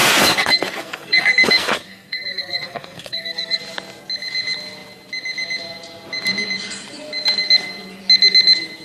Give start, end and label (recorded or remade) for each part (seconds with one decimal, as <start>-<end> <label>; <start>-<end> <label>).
0.0-3.6 remade; 3.6-8.8 recorded